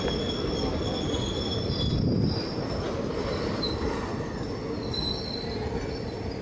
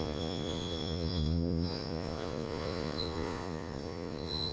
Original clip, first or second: first